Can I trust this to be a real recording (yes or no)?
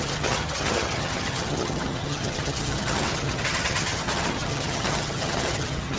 no